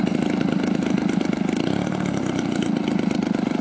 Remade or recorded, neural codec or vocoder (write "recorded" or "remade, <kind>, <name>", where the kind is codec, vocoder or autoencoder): recorded